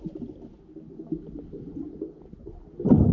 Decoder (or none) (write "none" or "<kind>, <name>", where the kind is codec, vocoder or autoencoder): none